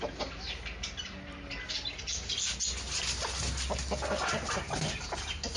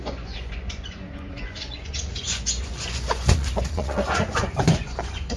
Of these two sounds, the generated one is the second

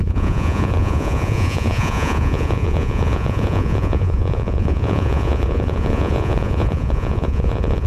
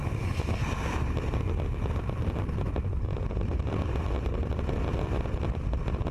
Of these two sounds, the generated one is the first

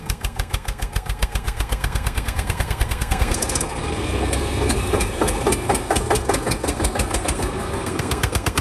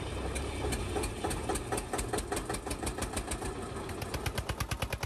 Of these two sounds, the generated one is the first